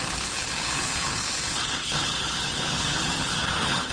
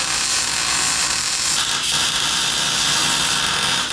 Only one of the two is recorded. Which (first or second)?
second